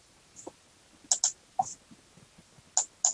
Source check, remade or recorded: recorded